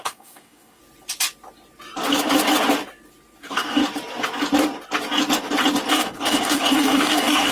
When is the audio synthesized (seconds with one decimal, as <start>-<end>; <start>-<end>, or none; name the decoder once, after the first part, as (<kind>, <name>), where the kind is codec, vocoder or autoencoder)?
0.0-0.8 (codec, DAC); 3.4-3.8; 5.9-7.5